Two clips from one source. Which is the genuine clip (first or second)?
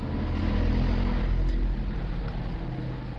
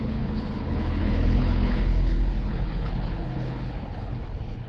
first